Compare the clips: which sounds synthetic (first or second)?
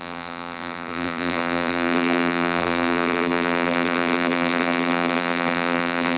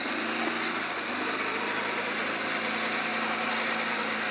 first